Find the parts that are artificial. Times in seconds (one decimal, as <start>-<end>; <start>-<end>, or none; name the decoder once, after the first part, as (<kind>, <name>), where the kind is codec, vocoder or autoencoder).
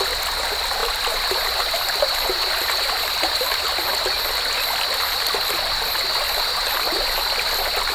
0.8-4.0 (vocoder, BigVGAN v2)